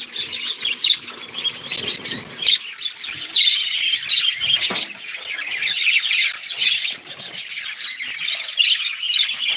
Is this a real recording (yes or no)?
yes